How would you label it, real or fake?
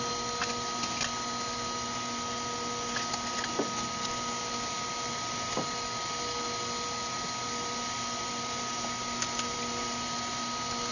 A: real